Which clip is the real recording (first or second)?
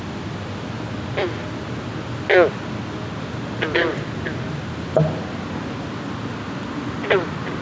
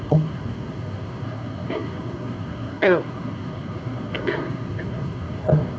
first